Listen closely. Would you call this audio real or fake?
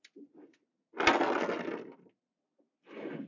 real